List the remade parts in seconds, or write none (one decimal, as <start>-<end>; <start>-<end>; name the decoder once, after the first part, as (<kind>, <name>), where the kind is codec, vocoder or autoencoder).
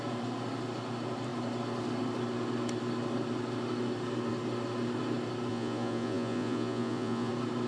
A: 5.5-7.3 (vocoder, Vocos)